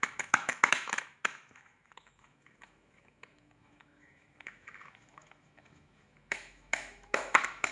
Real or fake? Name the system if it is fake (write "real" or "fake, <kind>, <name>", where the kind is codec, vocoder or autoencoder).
fake, autoencoder, DAC-VAE